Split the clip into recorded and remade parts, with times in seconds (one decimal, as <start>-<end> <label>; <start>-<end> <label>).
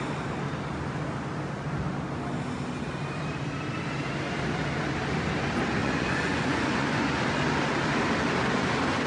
0.0-5.8 recorded; 5.8-7.2 remade; 7.2-9.1 recorded